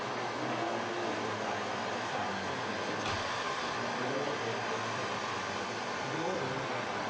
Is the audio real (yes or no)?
yes